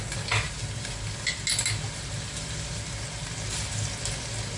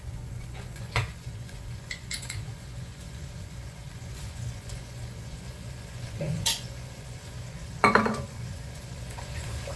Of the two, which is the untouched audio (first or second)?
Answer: first